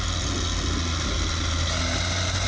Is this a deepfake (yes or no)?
no